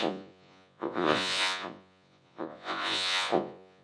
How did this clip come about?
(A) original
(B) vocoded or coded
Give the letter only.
B